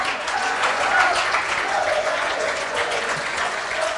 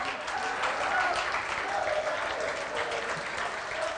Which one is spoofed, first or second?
first